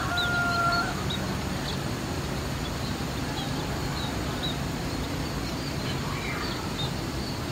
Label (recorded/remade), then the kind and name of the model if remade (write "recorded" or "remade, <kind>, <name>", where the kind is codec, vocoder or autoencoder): recorded